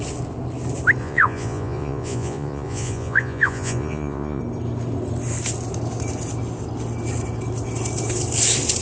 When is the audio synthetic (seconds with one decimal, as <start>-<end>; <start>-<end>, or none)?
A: 1.0-4.4